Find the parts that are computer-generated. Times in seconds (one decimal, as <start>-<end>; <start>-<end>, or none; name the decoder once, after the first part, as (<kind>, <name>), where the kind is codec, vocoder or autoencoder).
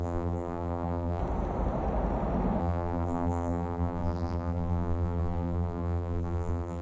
0.0-1.2 (vocoder, BigVGAN v2); 2.6-6.8